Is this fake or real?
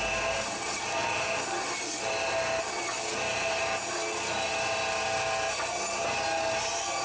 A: real